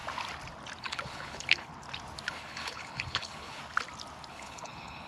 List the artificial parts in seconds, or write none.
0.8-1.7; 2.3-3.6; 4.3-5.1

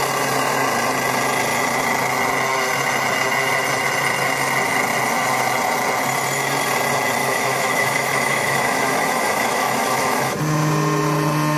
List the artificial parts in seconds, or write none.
7.2-10.4

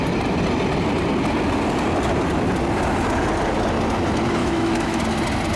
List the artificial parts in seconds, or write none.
4.4-5.0